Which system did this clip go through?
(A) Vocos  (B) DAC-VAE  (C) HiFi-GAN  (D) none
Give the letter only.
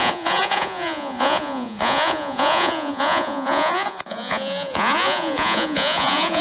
A